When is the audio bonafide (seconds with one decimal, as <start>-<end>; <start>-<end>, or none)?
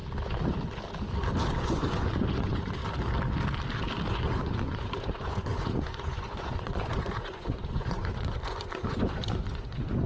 0.0-1.6; 2.8-4.1